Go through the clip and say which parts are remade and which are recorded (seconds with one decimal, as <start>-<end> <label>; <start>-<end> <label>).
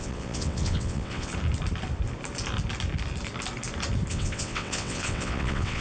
0.0-1.3 remade; 1.3-4.1 recorded; 4.1-5.8 remade